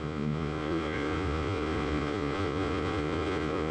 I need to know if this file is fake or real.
fake